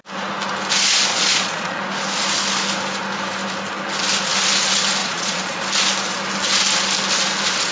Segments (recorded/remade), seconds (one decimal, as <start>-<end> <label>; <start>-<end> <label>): 0.0-1.1 recorded; 1.1-1.8 remade; 1.8-5.0 recorded; 5.0-5.6 remade; 5.6-7.7 recorded